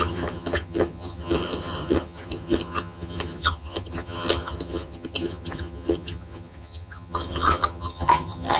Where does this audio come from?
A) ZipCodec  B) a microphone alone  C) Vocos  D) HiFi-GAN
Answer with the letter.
D